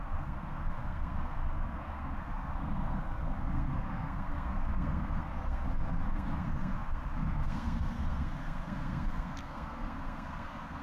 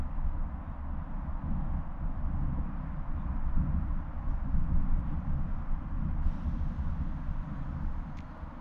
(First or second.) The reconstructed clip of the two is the first